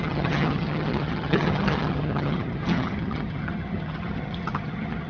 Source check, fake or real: fake